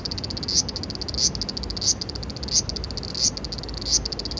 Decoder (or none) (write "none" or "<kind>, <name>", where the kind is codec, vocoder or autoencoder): none